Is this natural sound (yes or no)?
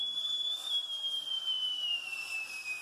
yes